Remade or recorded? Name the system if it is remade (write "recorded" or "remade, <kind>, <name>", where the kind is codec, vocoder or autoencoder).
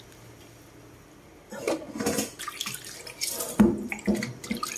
recorded